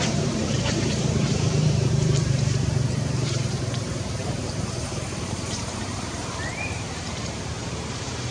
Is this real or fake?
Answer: fake